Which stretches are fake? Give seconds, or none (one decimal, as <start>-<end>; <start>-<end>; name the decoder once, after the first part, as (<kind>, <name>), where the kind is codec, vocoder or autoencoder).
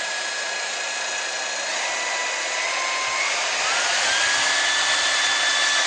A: none